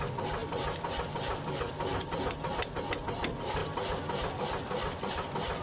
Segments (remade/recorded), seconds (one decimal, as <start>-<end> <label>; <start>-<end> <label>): 0.0-0.4 remade; 0.4-1.0 recorded; 1.0-1.9 remade; 1.9-3.0 recorded; 3.0-5.6 remade